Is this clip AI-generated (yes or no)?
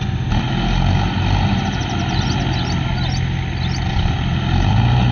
no